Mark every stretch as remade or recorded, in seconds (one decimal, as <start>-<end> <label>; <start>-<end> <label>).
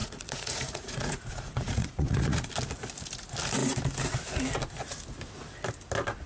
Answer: 0.0-2.5 remade; 2.5-6.3 recorded